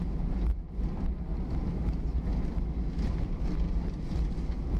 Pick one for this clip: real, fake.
real